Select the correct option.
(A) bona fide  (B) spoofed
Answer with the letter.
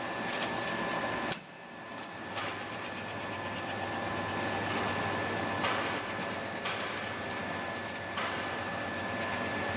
A